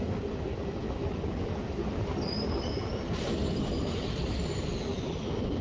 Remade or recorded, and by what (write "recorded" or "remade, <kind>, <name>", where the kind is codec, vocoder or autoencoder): recorded